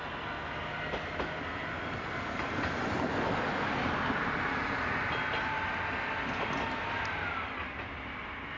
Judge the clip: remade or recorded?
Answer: recorded